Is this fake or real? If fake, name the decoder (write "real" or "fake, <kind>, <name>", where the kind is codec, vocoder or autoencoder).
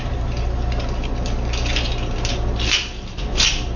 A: real